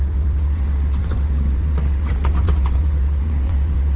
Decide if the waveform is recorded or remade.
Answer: remade